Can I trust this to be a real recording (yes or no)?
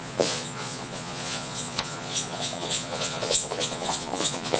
no